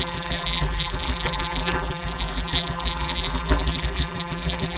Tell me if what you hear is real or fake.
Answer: fake